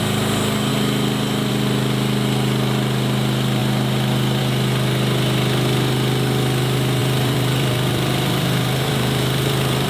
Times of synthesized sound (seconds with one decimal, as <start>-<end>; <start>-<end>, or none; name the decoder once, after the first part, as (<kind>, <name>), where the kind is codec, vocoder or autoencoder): 7.0-9.9 (vocoder, BigVGAN v2)